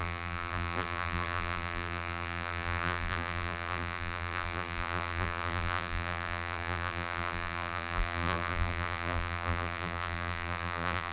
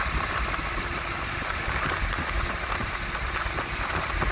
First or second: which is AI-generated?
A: first